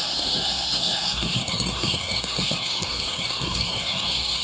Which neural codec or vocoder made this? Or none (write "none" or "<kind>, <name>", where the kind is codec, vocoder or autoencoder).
codec, SNAC